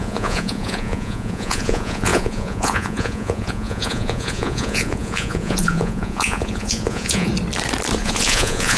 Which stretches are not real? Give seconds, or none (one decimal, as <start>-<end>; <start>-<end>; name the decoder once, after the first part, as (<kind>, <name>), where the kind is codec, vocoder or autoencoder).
0.0-7.3 (vocoder, Vocos); 8.0-8.8